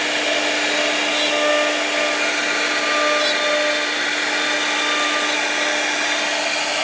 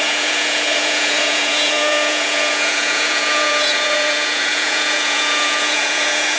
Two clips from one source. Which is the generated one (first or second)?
second